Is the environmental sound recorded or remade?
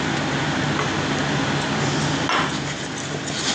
recorded